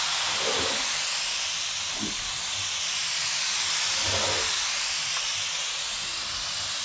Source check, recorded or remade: recorded